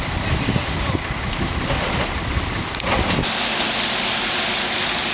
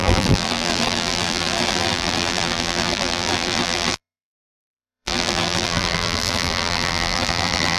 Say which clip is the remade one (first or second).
second